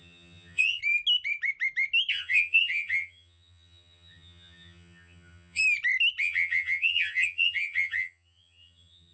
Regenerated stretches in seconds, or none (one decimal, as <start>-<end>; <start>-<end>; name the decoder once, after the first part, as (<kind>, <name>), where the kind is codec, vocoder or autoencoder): 0.0-0.8 (vocoder, HiFi-GAN); 2.1-5.6; 6.2-9.1